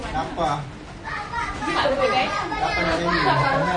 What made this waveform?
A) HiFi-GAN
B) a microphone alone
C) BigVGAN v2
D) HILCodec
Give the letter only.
B